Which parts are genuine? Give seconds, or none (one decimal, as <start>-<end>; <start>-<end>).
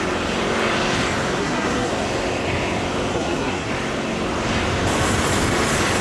0.0-1.4; 1.9-3.1; 3.7-6.0